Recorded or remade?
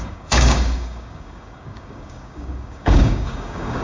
remade